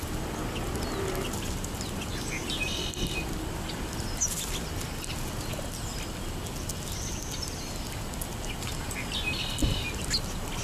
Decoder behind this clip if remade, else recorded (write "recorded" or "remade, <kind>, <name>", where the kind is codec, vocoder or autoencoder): recorded